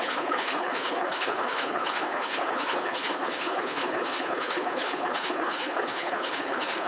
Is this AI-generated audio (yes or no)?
yes